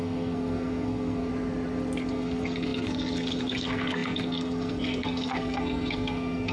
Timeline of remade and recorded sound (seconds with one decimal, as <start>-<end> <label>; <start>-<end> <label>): 0.0-1.3 remade; 1.3-2.1 recorded; 2.1-6.5 remade